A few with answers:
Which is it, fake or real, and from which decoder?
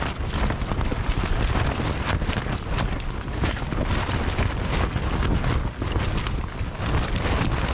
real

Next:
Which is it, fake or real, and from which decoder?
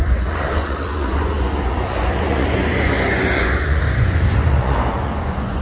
fake, vocoder, Vocos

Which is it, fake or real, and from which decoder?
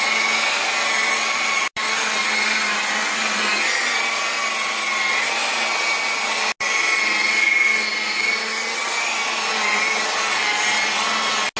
real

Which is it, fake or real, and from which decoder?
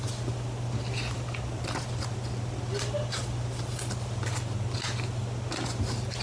real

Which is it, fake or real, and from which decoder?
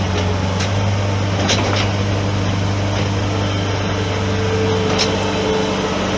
real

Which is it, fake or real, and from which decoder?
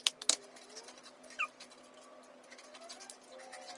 real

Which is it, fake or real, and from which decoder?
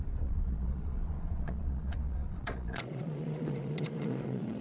fake, vocoder, Vocos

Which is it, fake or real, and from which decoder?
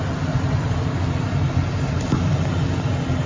real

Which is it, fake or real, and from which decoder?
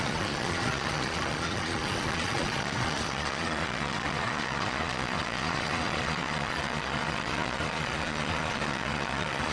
fake, vocoder, Vocos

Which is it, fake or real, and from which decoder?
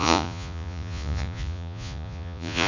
fake, vocoder, Vocos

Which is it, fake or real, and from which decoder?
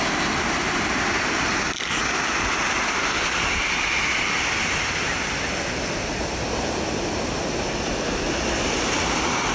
real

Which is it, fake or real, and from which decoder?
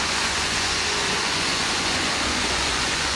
fake, vocoder, Vocos